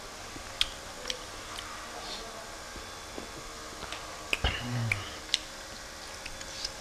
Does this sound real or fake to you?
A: real